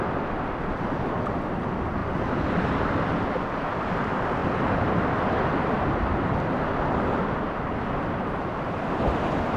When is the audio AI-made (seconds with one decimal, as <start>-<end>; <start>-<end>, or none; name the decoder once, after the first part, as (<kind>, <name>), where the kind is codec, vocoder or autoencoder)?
none